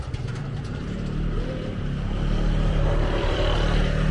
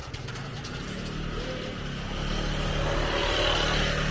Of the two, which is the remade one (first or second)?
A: first